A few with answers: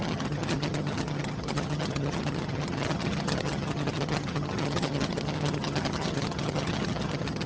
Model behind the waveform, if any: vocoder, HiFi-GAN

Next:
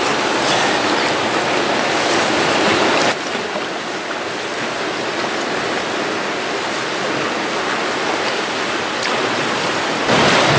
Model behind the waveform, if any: none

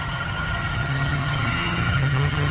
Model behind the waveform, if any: vocoder, HiFi-GAN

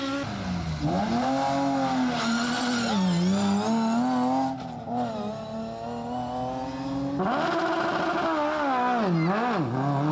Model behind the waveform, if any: none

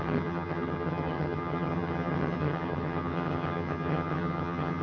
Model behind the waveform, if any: vocoder, HiFi-GAN